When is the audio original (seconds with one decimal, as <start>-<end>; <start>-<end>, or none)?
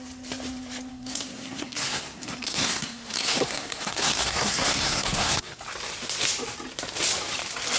0.0-0.9; 5.6-7.8